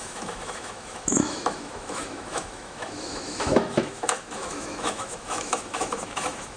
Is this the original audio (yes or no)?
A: no